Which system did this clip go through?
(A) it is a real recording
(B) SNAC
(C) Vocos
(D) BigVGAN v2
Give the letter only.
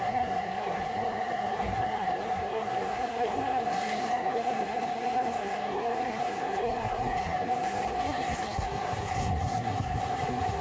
B